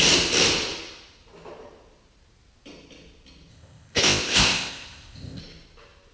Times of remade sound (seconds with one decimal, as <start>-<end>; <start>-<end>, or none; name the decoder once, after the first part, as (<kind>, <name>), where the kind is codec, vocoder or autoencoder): 3.5-5.4 (codec, ZipCodec)